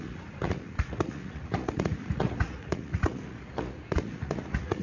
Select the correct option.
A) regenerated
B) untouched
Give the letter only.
A